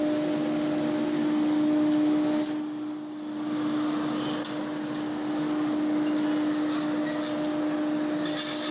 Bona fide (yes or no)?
yes